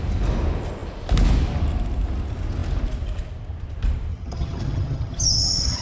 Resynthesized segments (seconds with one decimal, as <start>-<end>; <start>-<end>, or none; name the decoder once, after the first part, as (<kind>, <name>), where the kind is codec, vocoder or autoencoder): 4.1-5.8 (vocoder, HiFi-GAN)